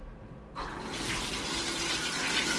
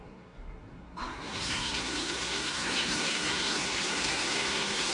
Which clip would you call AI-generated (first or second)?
second